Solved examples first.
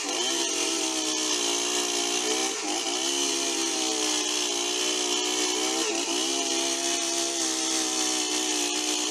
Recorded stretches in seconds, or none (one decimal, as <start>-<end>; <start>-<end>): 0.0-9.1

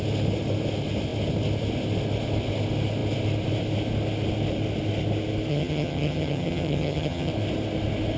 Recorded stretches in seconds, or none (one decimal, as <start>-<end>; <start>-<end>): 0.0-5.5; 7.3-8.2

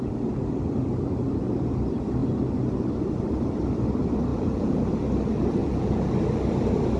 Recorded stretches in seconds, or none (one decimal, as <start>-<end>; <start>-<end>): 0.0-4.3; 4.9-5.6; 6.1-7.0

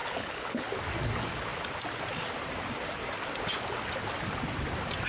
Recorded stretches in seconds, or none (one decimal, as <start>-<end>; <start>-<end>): 0.7-5.1

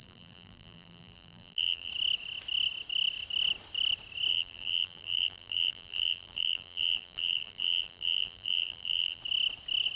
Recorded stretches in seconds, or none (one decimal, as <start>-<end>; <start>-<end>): 1.9-4.3; 9.2-10.0

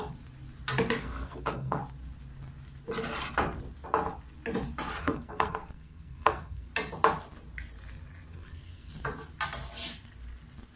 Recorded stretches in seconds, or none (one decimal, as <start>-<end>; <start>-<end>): 0.0-1.0; 1.8-5.0; 6.7-8.3; 8.9-10.8